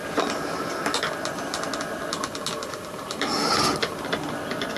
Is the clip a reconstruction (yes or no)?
no